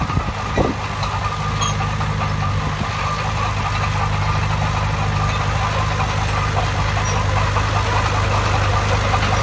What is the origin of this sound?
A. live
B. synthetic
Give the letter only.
A